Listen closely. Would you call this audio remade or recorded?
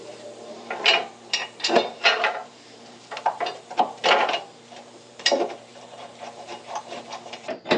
remade